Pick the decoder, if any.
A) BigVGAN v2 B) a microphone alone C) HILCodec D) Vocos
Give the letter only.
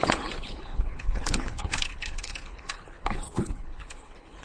C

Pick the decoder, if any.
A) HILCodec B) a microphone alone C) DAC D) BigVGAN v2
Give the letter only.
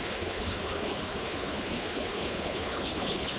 A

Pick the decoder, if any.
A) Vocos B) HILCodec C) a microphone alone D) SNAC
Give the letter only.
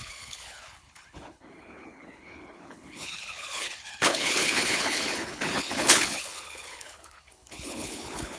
B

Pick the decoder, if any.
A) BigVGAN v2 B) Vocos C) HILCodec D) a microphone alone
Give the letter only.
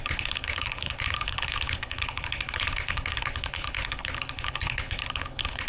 C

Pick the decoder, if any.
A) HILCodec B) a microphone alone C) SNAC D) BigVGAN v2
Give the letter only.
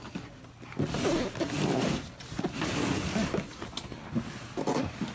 B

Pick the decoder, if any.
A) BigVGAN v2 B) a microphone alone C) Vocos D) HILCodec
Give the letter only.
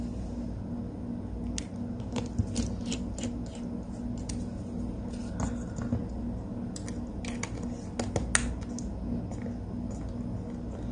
B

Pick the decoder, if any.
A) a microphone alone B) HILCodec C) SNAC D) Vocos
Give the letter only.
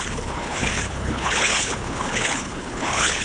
B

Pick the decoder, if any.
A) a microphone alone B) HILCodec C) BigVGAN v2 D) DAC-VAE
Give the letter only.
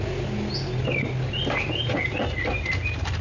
A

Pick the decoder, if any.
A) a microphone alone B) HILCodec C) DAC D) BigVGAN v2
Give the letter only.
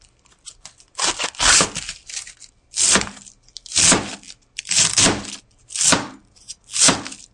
A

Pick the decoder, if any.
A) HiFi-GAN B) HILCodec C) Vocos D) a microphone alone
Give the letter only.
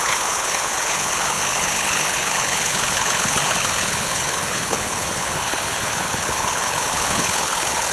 B